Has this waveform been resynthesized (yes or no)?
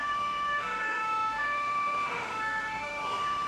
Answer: yes